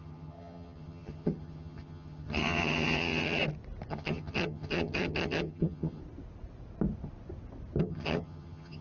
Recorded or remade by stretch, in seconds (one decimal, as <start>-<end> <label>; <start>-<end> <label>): 0.0-3.4 remade; 3.4-3.9 recorded; 3.9-6.0 remade; 6.0-7.8 recorded; 7.8-8.8 remade